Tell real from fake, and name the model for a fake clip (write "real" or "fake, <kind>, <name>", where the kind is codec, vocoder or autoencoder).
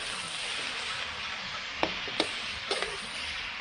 real